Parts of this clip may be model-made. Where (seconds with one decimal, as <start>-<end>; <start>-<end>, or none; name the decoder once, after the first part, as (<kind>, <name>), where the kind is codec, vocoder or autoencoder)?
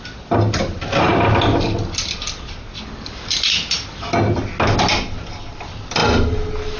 none